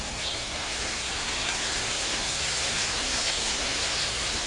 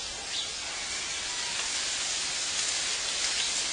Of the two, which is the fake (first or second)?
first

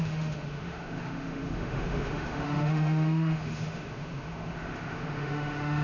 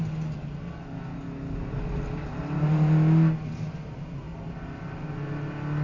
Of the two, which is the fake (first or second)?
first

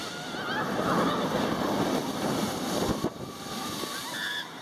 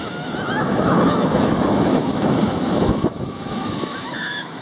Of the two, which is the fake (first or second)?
second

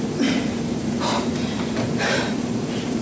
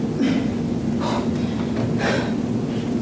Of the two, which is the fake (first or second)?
first